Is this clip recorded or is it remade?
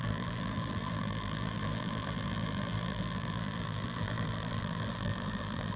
remade